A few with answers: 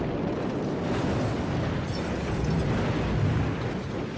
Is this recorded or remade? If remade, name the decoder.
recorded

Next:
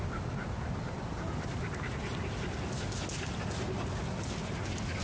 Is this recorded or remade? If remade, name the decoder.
recorded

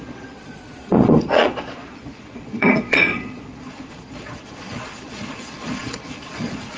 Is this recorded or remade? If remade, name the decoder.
remade, vocoder, Vocos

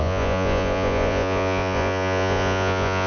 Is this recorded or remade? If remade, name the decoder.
remade, vocoder, Vocos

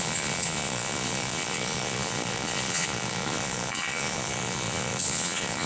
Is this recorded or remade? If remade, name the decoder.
remade, vocoder, Vocos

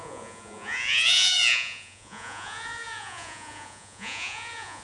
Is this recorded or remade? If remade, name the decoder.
remade, vocoder, Vocos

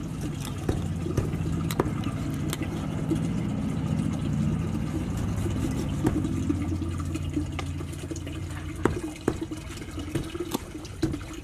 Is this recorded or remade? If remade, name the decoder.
recorded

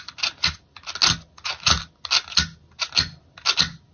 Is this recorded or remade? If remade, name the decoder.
recorded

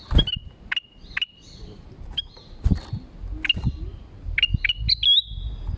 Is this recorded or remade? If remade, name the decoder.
recorded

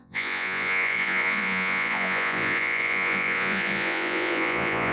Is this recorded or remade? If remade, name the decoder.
remade, vocoder, Vocos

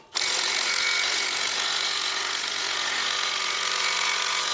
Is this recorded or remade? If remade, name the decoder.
remade, vocoder, Vocos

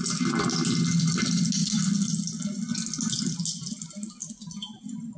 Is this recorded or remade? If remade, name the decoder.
recorded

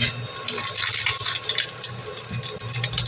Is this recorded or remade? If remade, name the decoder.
recorded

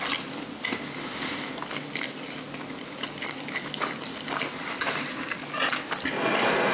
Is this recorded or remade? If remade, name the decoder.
recorded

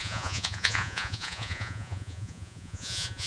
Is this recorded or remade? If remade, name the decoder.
remade, vocoder, Vocos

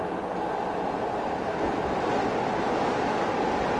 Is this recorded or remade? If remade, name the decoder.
recorded